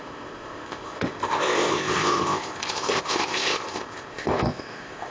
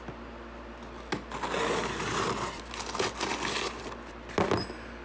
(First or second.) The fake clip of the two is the first